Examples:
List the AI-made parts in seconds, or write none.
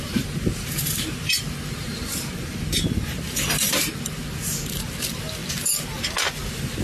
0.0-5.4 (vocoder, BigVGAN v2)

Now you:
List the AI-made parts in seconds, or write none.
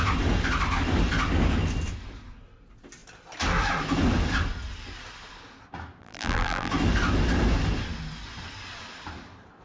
6.0-6.7 (vocoder, BigVGAN v2)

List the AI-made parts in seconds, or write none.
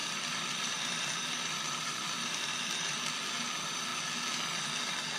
0.0-3.1 (vocoder, BigVGAN v2)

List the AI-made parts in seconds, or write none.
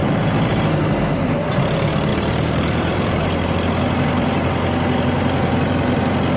0.0-0.6 (vocoder, BigVGAN v2); 2.1-3.5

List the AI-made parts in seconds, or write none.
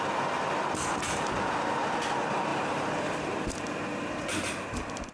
2.5-4.1 (vocoder, BigVGAN v2)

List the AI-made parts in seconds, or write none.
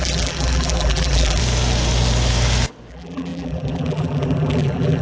0.0-1.4 (vocoder, BigVGAN v2); 2.9-5.0